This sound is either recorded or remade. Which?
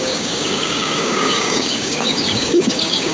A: remade